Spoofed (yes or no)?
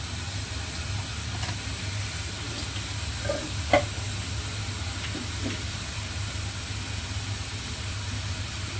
no